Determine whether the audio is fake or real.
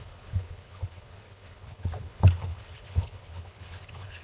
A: fake